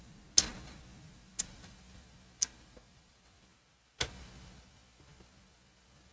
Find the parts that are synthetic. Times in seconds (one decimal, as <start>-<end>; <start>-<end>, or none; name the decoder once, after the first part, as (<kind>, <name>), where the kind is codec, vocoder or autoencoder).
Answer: none

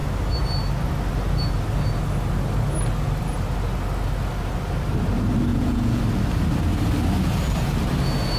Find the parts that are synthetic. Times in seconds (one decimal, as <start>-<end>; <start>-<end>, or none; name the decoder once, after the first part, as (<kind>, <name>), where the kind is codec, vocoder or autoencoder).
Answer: 5.5-6.0 (vocoder, Vocos)

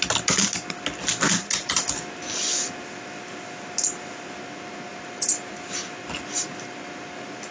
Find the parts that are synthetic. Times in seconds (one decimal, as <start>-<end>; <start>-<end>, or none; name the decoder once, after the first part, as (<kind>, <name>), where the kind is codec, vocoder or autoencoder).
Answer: none

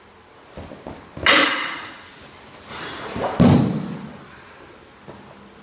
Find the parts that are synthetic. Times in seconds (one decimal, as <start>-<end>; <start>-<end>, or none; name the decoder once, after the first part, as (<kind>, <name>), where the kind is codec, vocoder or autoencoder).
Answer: 1.4-2.2 (vocoder, Vocos); 2.7-3.4